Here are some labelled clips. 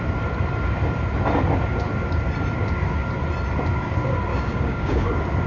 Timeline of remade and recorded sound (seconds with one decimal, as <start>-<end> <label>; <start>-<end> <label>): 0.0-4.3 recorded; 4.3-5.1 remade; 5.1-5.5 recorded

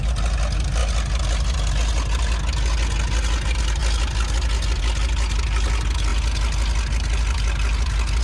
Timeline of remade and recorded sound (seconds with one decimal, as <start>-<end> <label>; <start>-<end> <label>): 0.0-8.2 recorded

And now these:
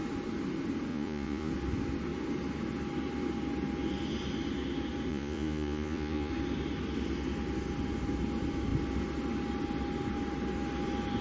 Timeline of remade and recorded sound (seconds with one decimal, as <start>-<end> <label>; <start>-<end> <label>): 0.0-0.9 recorded; 0.9-1.5 remade; 1.5-5.1 recorded; 5.1-6.3 remade; 6.3-11.2 recorded

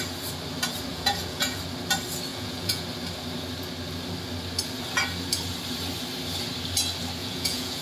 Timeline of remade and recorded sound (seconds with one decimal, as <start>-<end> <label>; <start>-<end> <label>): 0.0-0.9 recorded; 0.9-1.6 remade; 1.6-2.3 recorded; 2.3-2.8 remade; 2.8-7.2 recorded; 7.2-7.8 remade

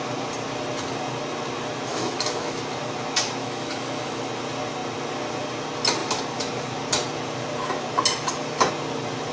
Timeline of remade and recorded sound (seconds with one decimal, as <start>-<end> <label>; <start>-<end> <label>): 0.0-1.9 recorded; 1.9-2.6 remade; 2.6-3.4 recorded; 3.4-4.3 remade; 4.3-9.3 recorded

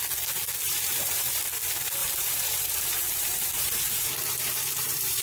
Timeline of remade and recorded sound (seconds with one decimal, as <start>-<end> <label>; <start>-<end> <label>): 0.0-0.6 recorded; 0.6-1.4 remade; 1.4-2.0 recorded; 2.0-5.2 remade